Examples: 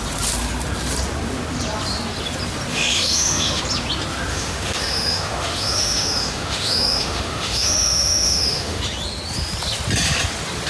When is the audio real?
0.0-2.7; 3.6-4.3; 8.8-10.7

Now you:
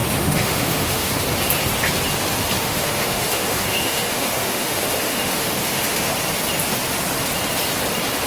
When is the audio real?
1.1-2.6; 6.1-8.3

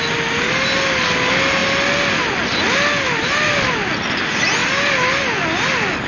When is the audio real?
0.0-6.1

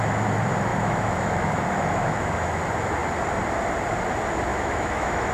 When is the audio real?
0.0-0.7; 2.6-4.5